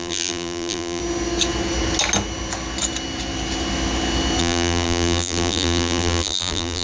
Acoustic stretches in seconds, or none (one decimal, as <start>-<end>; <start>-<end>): 1.0-4.4